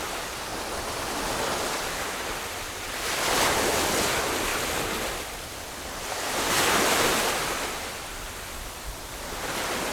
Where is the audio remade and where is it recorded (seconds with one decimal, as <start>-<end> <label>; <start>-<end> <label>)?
0.0-9.9 recorded